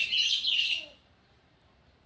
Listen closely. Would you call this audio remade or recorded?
remade